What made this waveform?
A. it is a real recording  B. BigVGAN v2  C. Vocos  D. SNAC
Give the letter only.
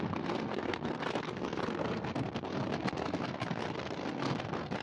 D